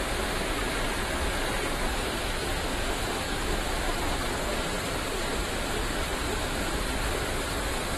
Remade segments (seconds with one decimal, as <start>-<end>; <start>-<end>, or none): 1.2-2.3